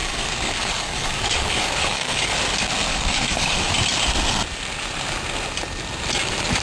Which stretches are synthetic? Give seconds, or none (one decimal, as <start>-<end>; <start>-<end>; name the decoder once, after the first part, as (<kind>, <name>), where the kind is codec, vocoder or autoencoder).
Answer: 0.0-2.3 (codec, DAC); 2.9-3.7